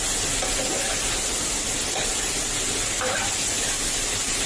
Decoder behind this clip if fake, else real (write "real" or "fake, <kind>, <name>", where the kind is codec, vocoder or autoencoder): real